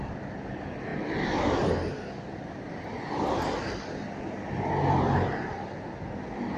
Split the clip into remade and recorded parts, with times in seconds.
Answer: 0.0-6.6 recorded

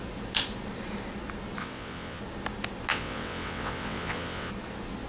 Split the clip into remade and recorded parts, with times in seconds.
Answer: 0.0-1.6 recorded; 1.6-2.2 remade; 2.2-2.9 recorded; 2.9-4.5 remade; 4.5-5.1 recorded

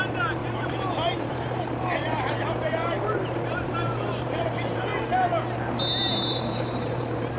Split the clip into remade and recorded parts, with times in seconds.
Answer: 0.0-4.9 remade; 4.9-6.3 recorded; 6.3-7.4 remade

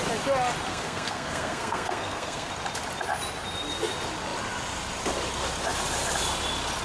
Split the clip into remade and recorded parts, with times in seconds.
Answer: 0.0-0.7 recorded; 0.7-2.5 remade; 2.5-6.8 recorded

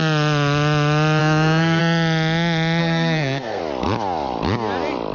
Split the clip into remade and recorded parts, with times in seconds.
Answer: 0.0-1.2 recorded; 1.2-1.8 remade; 1.8-2.8 recorded; 2.8-3.6 remade; 3.6-5.1 recorded

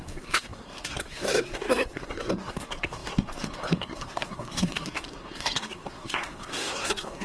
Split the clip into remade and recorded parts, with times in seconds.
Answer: 0.0-7.2 remade

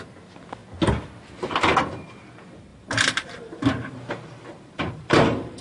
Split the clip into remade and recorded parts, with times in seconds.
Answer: 0.0-2.7 recorded; 2.7-5.6 remade